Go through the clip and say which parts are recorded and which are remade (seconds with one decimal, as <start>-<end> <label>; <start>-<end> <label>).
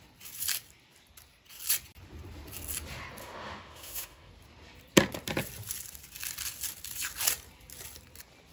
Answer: 0.0-3.2 recorded; 3.2-4.3 remade; 4.3-8.5 recorded